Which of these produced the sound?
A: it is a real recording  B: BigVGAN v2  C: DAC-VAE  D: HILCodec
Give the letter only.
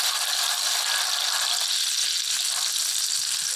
A